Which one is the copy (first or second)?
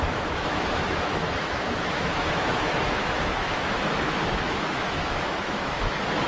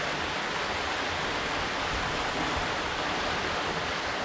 first